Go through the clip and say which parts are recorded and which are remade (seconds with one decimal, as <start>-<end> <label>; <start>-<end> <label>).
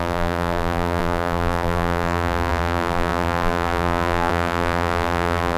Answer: 0.0-5.6 remade